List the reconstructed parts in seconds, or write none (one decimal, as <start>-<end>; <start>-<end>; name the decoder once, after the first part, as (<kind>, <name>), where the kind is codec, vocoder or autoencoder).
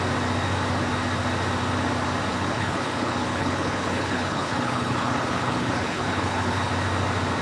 2.3-6.7 (codec, HILCodec)